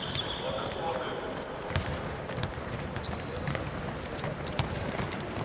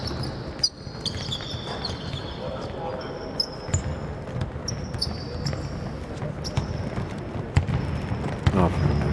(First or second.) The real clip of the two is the second